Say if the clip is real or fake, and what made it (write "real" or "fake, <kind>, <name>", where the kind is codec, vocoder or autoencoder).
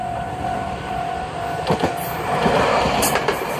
fake, vocoder, BigVGAN v2